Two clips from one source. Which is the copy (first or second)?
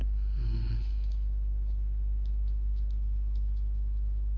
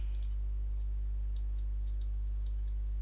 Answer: first